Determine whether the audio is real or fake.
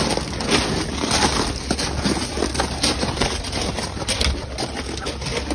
real